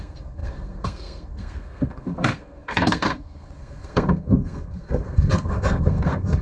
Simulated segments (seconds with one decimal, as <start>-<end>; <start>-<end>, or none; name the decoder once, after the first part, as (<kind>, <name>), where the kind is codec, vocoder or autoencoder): 0.0-6.4 (codec, SNAC)